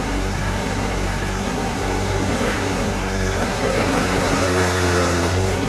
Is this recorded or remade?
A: remade